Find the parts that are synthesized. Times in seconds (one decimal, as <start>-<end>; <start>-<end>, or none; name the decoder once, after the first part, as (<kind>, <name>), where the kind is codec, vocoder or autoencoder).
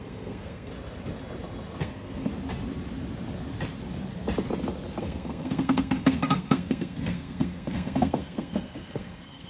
0.0-0.7 (codec, SNAC); 1.8-2.3; 5.0-9.5